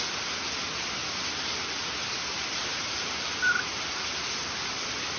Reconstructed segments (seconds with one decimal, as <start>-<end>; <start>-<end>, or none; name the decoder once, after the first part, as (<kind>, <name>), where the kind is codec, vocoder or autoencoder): none